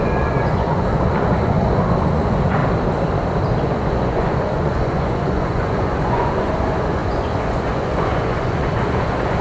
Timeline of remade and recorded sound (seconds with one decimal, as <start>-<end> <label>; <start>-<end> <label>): 0.0-2.6 remade; 2.6-3.6 recorded; 3.6-9.4 remade